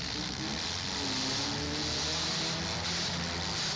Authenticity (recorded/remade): recorded